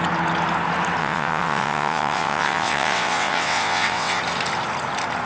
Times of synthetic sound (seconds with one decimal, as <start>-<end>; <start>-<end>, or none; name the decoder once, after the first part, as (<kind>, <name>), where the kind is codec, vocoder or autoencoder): 1.0-4.2 (vocoder, WaveNeXt)